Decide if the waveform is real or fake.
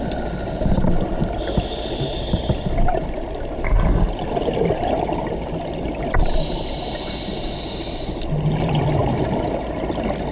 real